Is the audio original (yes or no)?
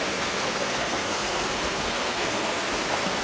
no